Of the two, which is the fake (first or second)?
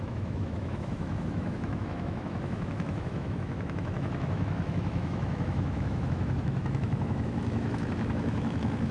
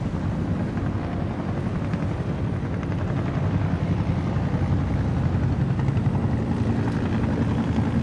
first